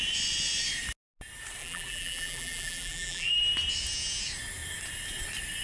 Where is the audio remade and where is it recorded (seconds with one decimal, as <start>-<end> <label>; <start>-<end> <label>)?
0.0-1.6 recorded; 1.6-3.3 remade; 3.3-5.6 recorded